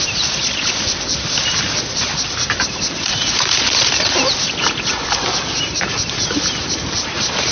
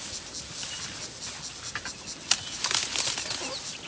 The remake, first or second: first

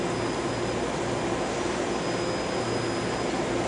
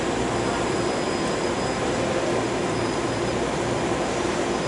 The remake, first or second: second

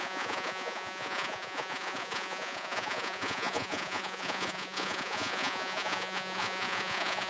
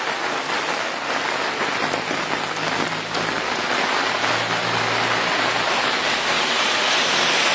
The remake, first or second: first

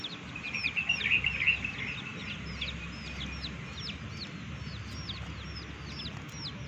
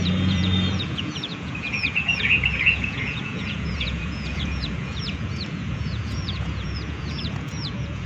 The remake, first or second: second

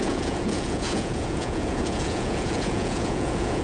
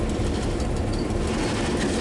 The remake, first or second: first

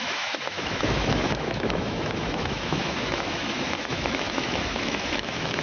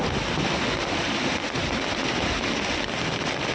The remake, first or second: first